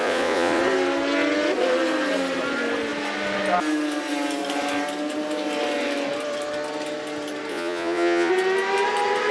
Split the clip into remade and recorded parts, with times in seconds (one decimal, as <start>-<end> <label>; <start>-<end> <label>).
0.0-0.6 remade; 0.6-7.5 recorded; 7.5-8.3 remade; 8.3-9.3 recorded